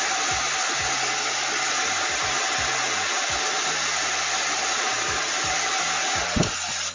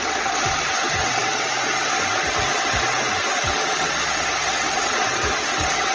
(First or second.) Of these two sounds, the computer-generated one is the second